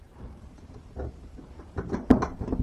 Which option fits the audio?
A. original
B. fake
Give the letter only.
B